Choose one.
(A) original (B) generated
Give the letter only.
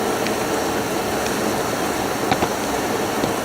A